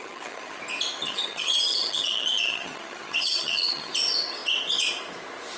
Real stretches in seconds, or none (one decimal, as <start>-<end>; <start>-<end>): 0.6-1.0; 3.9-5.6